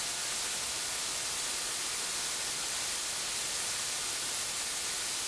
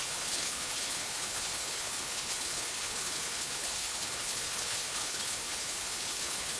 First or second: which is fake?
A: second